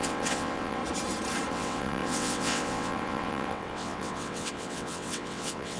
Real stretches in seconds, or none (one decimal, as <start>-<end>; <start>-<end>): 0.8-1.5